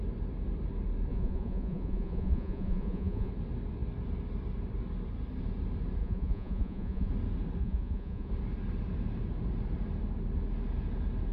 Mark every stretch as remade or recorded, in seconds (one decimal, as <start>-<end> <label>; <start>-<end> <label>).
0.0-1.1 recorded; 1.1-3.3 remade; 3.3-6.0 recorded; 6.0-7.1 remade; 7.1-7.6 recorded; 7.6-8.3 remade; 8.3-11.3 recorded

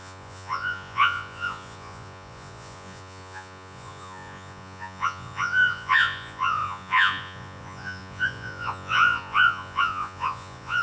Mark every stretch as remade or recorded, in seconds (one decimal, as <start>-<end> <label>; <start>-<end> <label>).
0.0-10.8 remade

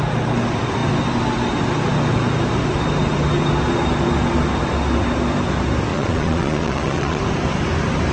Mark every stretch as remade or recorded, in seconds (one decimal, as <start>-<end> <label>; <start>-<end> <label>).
0.0-5.9 recorded; 5.9-7.2 remade; 7.2-8.1 recorded

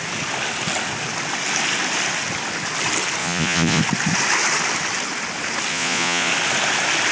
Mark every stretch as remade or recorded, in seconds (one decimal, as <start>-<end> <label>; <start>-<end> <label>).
0.0-3.2 recorded; 3.2-3.8 remade; 3.8-5.7 recorded; 5.7-6.3 remade; 6.3-7.1 recorded

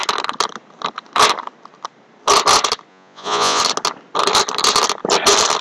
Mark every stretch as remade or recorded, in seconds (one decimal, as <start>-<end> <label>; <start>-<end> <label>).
0.0-2.9 recorded; 2.9-3.6 remade; 3.6-5.6 recorded

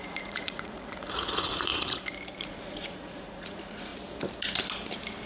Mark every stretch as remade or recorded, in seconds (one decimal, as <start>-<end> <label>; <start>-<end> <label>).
0.0-1.7 remade; 1.7-2.4 recorded; 2.4-3.9 remade; 3.9-5.3 recorded